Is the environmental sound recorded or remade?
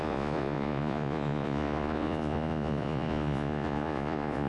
remade